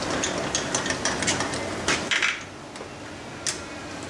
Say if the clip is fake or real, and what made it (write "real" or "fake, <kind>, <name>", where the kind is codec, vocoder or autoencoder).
real